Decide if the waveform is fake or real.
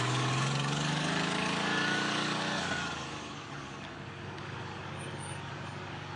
fake